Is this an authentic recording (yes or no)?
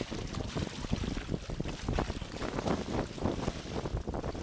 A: yes